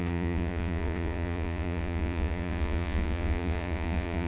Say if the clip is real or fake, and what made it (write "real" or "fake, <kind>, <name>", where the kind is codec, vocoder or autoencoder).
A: fake, vocoder, Vocos